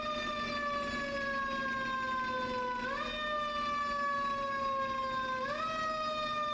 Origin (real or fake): real